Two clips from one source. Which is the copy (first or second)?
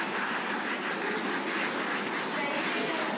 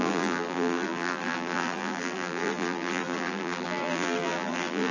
second